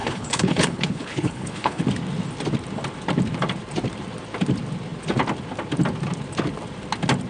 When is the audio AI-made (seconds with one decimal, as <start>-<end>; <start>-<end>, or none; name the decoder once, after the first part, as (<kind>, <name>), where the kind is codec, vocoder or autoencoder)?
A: 0.0-1.8 (codec, HILCodec)